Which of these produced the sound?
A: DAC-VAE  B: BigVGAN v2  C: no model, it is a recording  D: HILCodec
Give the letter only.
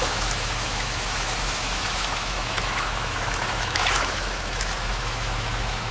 A